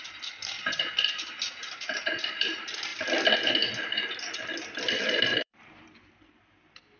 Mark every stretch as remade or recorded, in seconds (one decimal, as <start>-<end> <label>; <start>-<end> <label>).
0.0-2.9 remade; 2.9-5.0 recorded; 5.0-7.0 remade